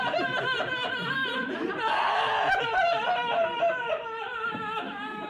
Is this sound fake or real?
real